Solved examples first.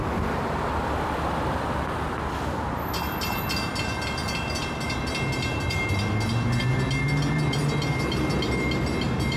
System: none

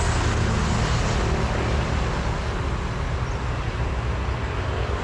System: none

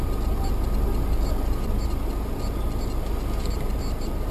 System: none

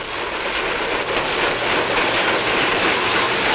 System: none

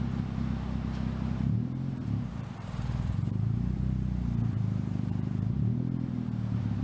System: vocoder, BigVGAN v2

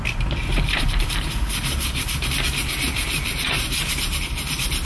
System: vocoder, BigVGAN v2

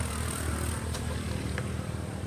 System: vocoder, BigVGAN v2